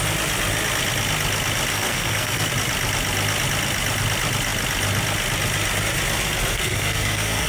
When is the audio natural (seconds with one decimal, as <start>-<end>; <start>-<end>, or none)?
0.0-1.7; 2.5-6.5